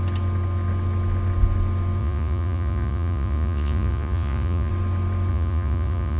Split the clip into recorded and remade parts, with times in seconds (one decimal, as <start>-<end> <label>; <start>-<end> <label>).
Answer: 0.0-2.0 recorded; 2.0-4.7 remade; 4.7-5.3 recorded; 5.3-6.2 remade